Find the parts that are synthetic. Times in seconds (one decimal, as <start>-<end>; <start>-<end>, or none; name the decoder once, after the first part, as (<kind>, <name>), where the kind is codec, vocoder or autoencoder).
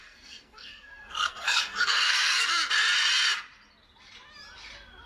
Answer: 0.0-2.5 (codec, SNAC)